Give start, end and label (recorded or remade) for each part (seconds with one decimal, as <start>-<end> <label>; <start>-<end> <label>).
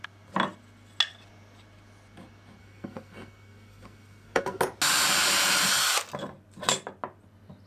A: 0.0-2.6 recorded; 2.6-4.6 remade; 4.6-7.7 recorded